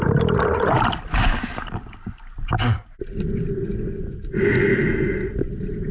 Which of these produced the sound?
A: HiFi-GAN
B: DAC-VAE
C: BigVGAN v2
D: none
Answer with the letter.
D